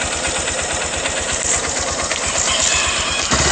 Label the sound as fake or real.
real